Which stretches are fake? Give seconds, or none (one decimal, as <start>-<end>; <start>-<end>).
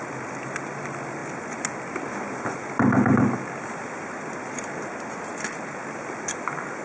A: none